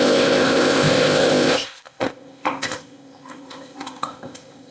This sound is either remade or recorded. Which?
remade